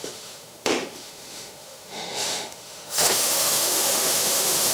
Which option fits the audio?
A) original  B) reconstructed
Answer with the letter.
B